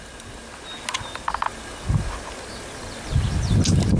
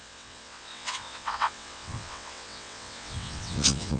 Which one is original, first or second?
first